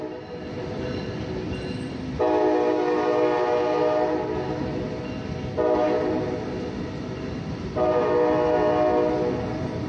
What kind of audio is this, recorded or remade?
recorded